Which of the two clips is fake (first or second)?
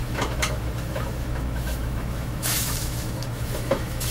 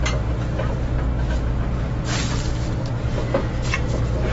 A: first